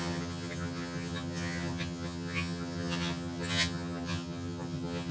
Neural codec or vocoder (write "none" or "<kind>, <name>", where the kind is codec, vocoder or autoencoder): vocoder, HiFi-GAN